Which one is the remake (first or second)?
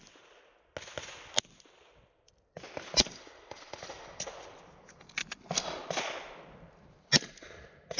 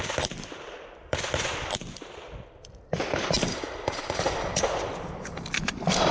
second